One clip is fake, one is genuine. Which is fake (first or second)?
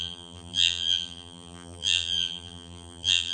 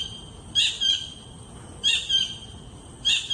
first